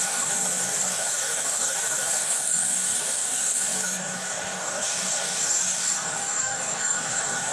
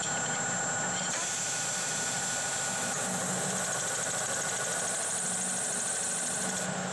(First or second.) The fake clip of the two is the first